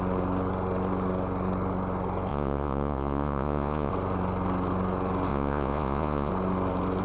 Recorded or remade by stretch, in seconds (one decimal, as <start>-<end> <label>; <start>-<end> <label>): 0.0-2.3 recorded; 2.3-3.9 remade; 3.9-5.3 recorded; 5.3-6.3 remade; 6.3-7.0 recorded